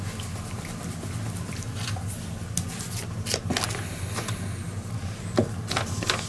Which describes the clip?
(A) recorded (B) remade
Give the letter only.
A